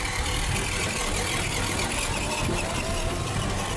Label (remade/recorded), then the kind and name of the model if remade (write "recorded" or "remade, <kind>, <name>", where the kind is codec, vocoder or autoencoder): recorded